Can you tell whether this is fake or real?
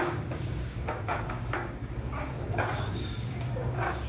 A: fake